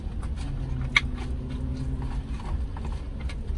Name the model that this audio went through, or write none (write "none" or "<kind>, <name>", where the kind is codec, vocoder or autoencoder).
none